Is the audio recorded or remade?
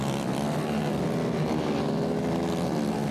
recorded